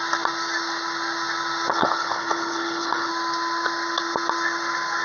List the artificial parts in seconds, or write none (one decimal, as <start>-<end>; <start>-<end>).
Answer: 1.7-3.1

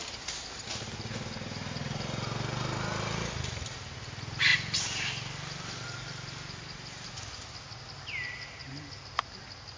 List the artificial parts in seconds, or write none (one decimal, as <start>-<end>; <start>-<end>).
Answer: none

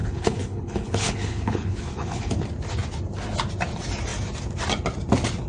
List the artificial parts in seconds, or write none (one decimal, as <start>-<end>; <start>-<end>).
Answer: 0.0-2.3

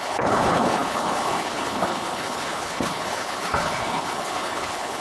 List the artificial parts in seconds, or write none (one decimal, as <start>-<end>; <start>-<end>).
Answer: 0.0-5.0